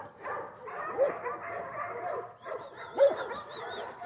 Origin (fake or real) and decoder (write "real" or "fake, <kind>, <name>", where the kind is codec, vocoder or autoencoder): real